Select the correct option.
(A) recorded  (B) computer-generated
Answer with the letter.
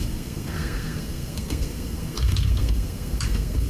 B